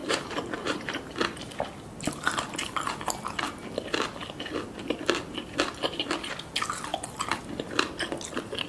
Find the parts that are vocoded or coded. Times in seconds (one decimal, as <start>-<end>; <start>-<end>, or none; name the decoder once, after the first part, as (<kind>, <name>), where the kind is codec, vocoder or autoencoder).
0.0-1.0 (vocoder, BigVGAN v2)